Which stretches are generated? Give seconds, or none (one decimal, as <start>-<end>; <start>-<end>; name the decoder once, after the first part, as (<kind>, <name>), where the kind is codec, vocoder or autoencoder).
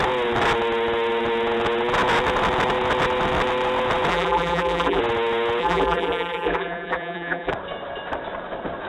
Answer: 4.1-5.0 (vocoder, BigVGAN v2); 5.6-7.5